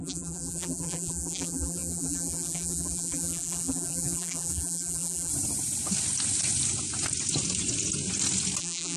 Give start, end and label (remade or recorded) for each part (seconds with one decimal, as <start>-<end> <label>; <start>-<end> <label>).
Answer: 0.0-5.3 remade; 5.3-8.6 recorded; 8.6-9.0 remade